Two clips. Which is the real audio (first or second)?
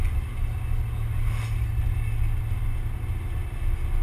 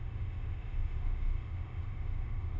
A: first